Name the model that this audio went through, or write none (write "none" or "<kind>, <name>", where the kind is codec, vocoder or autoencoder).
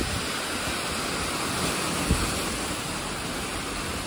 none